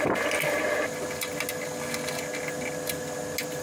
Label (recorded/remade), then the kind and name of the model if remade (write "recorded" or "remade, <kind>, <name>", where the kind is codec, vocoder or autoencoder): recorded